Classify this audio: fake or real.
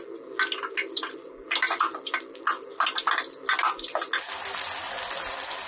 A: real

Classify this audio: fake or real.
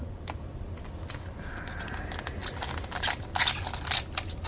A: real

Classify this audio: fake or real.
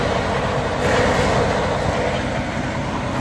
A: real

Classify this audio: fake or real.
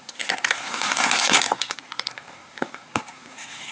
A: fake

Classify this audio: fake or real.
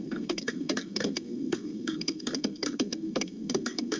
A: fake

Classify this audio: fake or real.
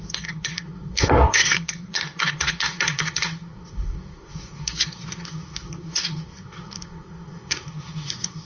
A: fake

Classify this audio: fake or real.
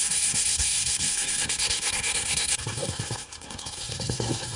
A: fake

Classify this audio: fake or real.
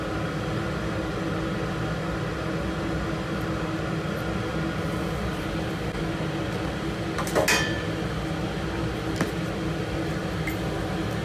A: real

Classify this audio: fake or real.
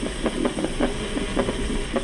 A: real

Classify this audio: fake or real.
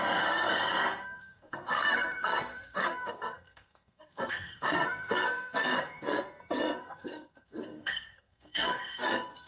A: fake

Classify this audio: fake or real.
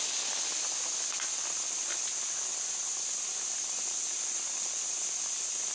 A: real